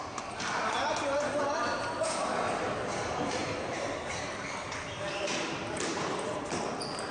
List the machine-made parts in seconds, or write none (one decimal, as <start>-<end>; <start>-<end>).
0.0-7.1